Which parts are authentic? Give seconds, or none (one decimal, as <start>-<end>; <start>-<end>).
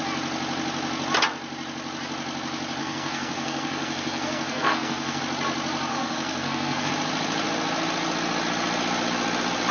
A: 0.0-2.8; 5.2-5.9; 6.9-9.7